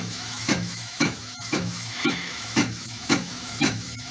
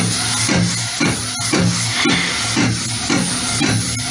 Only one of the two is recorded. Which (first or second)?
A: second